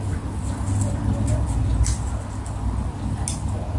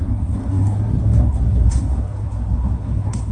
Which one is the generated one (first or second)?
second